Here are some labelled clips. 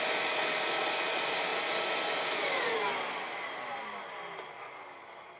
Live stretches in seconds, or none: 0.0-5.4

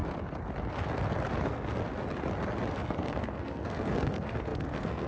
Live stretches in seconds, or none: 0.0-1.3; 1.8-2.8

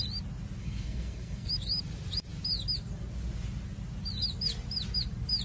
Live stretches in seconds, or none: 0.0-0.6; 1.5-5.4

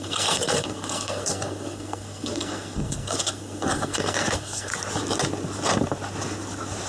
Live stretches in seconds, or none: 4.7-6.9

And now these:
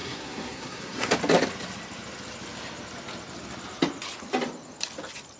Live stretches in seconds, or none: 1.1-5.4